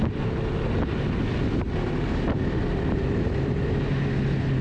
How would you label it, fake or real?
real